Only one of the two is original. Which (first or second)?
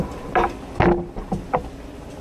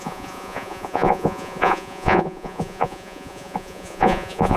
first